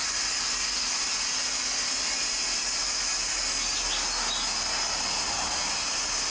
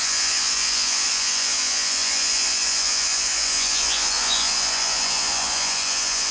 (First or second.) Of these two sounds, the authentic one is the first